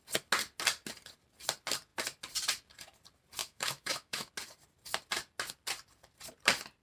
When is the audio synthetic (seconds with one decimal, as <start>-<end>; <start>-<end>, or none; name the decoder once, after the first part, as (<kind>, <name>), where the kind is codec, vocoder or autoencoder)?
3.4-4.3 (autoencoder, DAC-VAE)